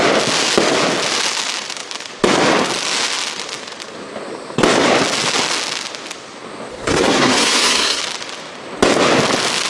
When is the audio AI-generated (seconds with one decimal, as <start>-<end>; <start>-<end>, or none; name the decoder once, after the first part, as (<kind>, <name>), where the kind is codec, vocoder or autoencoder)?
6.7-8.0 (codec, SNAC)